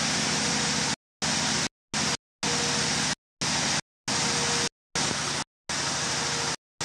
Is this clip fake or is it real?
real